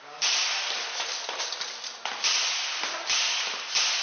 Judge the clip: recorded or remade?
recorded